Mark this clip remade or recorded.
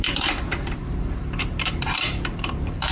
remade